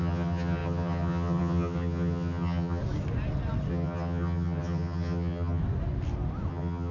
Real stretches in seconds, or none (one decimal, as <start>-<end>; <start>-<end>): 2.8-3.7; 5.6-6.5